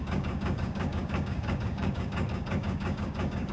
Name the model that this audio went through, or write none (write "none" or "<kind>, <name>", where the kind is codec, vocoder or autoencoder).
codec, DAC